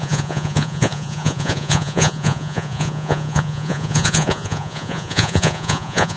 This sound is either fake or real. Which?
fake